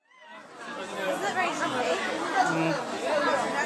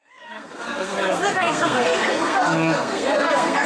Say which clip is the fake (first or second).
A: second